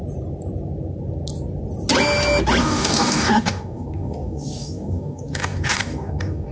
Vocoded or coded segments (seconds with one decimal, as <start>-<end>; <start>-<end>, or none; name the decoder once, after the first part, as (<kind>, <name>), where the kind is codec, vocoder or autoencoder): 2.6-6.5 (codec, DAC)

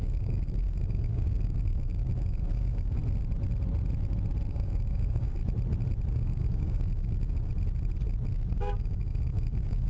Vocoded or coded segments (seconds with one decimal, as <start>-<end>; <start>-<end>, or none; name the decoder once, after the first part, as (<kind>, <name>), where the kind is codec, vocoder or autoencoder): 0.0-3.0 (codec, DAC); 4.5-5.4; 6.1-7.5; 8.5-9.9

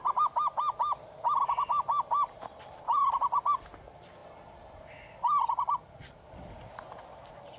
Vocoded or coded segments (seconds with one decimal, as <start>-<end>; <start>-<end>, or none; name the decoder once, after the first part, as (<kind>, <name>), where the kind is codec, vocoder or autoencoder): none

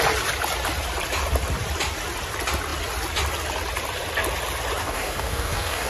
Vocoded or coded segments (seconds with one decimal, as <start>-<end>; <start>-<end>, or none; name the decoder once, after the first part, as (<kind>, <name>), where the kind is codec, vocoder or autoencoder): 4.8-5.9 (codec, DAC)

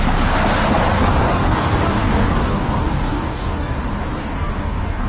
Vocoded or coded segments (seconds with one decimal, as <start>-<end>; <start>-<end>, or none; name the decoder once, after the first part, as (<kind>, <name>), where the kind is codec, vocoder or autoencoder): 1.1-3.8 (codec, DAC); 4.2-5.1